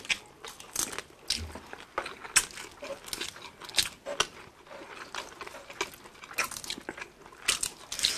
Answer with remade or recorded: recorded